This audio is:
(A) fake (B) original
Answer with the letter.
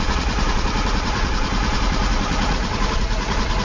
A